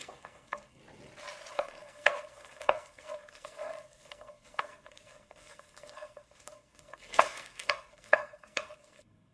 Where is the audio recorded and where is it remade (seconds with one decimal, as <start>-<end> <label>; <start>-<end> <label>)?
0.0-0.8 remade; 0.8-1.5 recorded; 1.5-9.3 remade